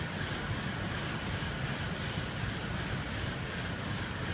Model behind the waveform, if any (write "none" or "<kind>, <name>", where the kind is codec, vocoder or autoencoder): none